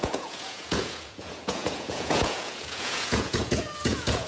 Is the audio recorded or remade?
remade